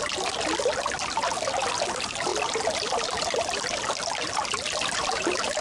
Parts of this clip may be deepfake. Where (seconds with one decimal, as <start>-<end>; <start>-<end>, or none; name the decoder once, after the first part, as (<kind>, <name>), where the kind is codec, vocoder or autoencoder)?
none